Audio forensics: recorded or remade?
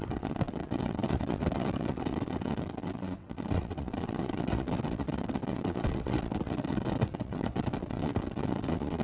remade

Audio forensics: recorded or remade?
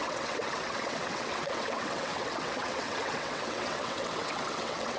remade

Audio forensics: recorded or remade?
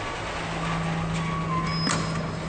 recorded